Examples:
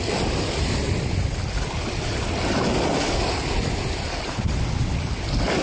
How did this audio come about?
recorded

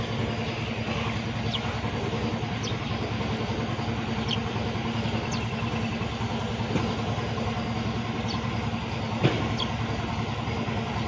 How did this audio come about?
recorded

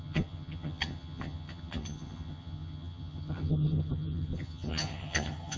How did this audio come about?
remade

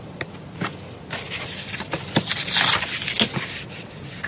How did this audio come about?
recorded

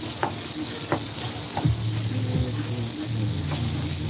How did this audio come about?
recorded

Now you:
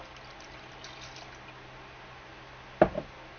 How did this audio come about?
recorded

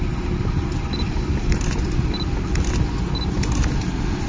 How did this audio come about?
recorded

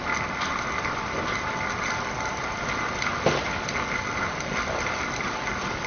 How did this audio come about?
recorded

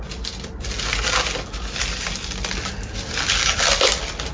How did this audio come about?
recorded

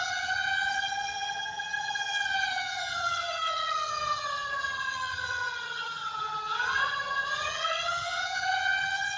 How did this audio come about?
remade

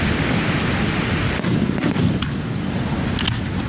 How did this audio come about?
recorded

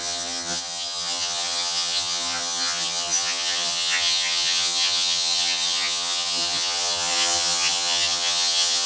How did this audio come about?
remade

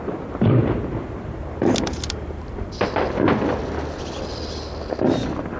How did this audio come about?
recorded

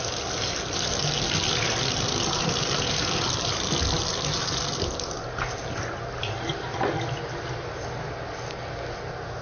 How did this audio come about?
recorded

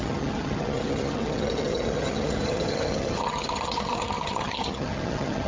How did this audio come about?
remade